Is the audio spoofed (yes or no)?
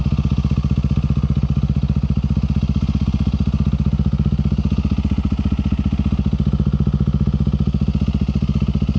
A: no